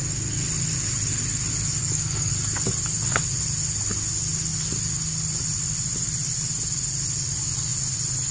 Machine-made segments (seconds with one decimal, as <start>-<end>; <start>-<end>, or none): 1.8-2.3

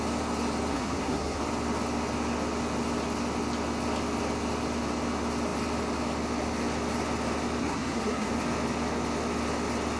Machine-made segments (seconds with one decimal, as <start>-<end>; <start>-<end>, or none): 0.7-1.4; 7.6-8.3